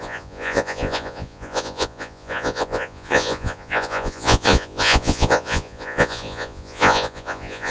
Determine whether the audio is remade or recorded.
remade